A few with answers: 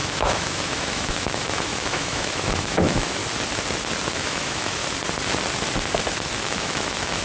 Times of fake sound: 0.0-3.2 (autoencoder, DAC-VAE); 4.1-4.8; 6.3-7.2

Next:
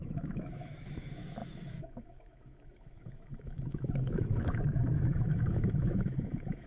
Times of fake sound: 0.0-6.7 (autoencoder, DAC-VAE)

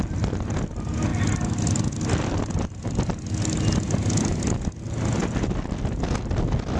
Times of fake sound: none

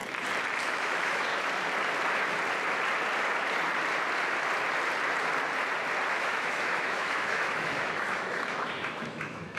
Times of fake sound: 0.7-1.3 (autoencoder, DAC-VAE); 6.1-9.6